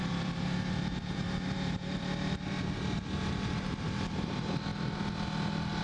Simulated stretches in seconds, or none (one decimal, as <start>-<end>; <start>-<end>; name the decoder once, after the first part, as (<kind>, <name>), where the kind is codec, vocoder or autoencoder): 0.0-4.7 (vocoder, BigVGAN v2)

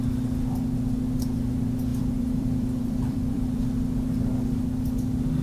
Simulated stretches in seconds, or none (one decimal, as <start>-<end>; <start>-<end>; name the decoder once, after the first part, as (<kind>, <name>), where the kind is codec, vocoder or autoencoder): 1.9-3.8 (vocoder, BigVGAN v2)

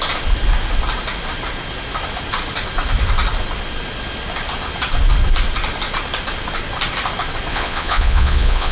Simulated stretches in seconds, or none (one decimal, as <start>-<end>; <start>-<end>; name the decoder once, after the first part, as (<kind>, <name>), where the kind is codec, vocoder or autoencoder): 7.5-8.7 (vocoder, Vocos)

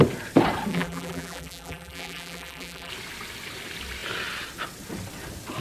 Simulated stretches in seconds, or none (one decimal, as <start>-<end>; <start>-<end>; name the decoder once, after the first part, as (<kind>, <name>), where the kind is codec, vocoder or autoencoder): 0.7-2.9 (vocoder, BigVGAN v2)